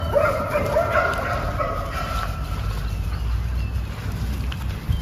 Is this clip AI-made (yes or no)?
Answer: no